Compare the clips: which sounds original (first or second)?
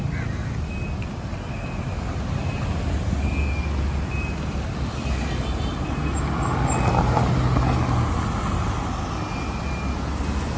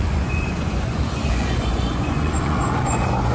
first